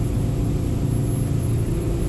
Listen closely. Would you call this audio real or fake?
real